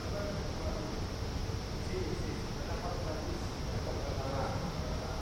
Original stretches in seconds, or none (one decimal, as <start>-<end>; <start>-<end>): 0.0-0.5; 1.4-2.8